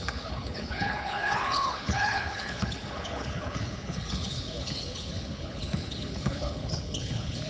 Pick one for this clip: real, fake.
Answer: fake